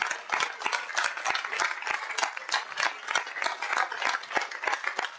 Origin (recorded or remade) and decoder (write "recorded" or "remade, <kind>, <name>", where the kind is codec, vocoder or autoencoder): recorded